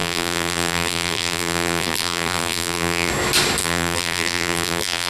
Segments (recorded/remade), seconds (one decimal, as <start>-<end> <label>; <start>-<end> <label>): 0.0-3.1 remade; 3.1-3.6 recorded; 3.6-5.1 remade